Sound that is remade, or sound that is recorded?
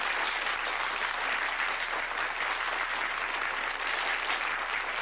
recorded